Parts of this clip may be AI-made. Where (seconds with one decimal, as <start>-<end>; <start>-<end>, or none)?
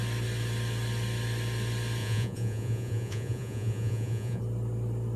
2.0-4.4